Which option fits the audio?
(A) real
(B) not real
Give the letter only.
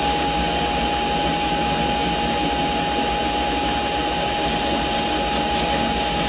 A